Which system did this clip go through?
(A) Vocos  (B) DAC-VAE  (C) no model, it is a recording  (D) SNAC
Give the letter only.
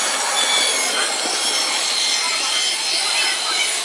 C